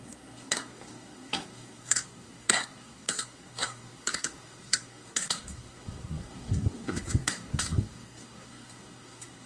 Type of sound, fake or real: fake